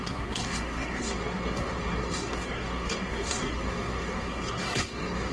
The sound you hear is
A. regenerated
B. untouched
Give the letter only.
A